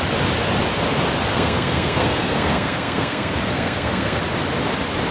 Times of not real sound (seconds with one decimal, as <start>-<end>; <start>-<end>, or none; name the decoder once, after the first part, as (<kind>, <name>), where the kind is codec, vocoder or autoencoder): 1.3-4.2 (codec, SNAC)

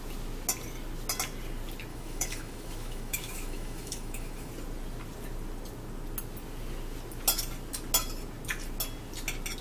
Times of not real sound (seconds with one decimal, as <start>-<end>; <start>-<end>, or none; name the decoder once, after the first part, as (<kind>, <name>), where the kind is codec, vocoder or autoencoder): 1.9-4.5 (autoencoder, DAC-VAE)

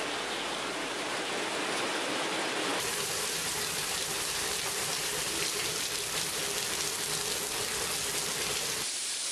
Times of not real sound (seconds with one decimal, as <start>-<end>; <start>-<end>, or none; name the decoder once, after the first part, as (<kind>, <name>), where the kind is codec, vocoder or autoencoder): 0.0-6.4 (vocoder, BigVGAN v2); 8.5-9.3

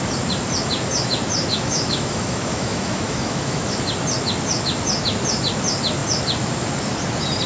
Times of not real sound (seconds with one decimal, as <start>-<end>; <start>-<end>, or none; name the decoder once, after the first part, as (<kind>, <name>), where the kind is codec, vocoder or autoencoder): 1.5-3.8 (autoencoder, DAC-VAE)